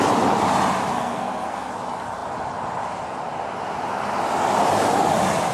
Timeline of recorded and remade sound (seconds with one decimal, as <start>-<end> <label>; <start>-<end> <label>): 0.0-0.9 recorded; 0.9-1.7 remade; 1.7-5.5 recorded